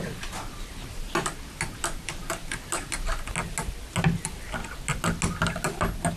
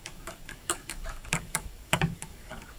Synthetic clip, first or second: second